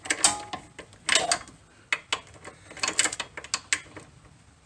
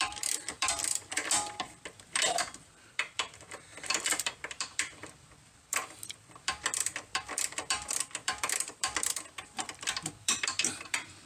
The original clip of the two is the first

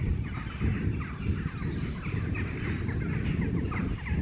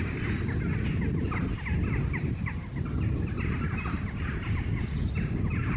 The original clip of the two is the second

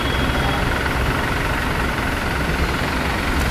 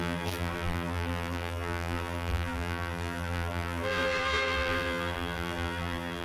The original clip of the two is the first